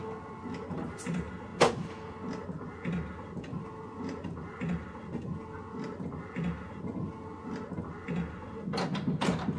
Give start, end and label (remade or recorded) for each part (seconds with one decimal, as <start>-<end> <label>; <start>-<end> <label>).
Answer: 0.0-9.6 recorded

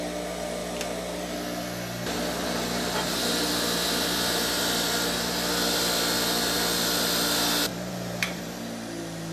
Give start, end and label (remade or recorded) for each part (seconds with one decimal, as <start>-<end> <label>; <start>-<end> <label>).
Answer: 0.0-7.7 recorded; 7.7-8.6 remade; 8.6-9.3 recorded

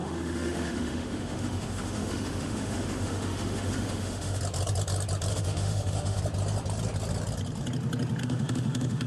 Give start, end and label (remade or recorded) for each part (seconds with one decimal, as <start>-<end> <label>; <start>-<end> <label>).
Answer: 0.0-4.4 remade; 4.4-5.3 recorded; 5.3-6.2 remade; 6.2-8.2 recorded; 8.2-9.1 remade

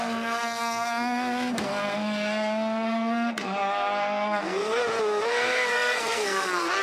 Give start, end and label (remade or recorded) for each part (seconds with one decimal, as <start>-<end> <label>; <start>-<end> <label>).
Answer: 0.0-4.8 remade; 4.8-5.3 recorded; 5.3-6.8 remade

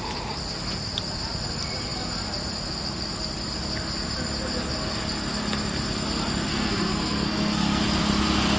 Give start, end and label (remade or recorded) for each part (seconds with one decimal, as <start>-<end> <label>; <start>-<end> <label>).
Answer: 0.0-6.5 recorded; 6.5-7.8 remade; 7.8-8.6 recorded

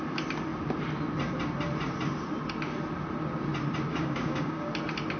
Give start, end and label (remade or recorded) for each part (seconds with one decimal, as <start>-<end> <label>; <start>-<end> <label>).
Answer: 0.0-3.9 recorded; 3.9-4.7 remade; 4.7-5.2 recorded

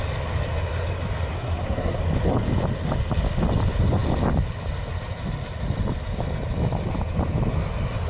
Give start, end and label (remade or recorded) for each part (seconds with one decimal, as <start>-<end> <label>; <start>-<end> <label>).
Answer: 0.0-1.3 recorded; 1.3-2.0 remade; 2.0-8.1 recorded